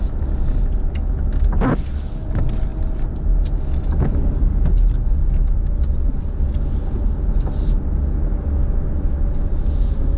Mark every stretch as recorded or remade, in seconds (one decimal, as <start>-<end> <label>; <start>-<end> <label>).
0.0-10.2 recorded